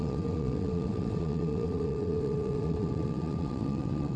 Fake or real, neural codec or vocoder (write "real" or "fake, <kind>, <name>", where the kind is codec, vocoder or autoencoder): fake, vocoder, WaveNeXt